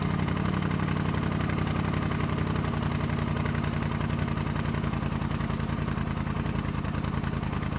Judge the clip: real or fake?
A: real